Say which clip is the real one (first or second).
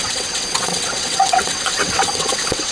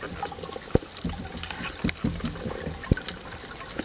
second